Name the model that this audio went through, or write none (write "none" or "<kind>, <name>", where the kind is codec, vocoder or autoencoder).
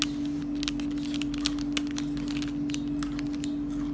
none